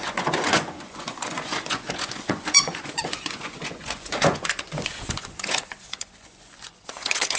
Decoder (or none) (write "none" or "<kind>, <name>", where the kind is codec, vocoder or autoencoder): vocoder, Vocos